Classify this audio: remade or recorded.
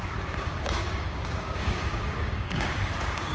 remade